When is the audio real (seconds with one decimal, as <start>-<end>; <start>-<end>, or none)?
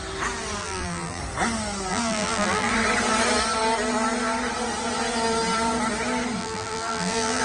0.0-0.6; 1.2-1.9; 2.7-6.4